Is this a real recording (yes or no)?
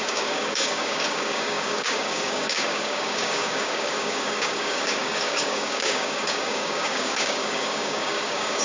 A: no